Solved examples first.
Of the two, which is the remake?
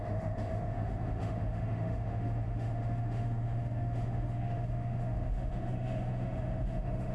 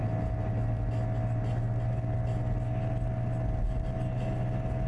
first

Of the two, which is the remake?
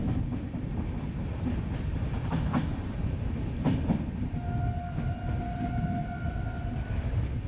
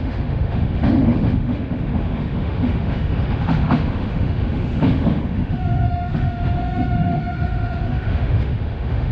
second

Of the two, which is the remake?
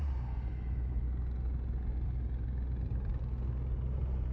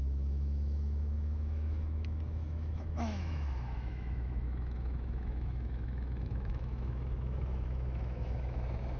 second